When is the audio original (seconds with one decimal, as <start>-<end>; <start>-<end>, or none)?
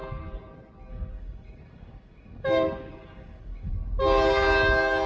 0.0-0.9; 3.7-5.1